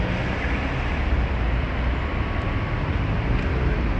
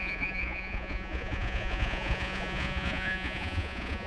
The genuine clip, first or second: first